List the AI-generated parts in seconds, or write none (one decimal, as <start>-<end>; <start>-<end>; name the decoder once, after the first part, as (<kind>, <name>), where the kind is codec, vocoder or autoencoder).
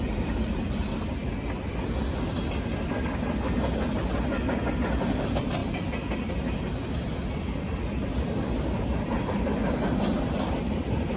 none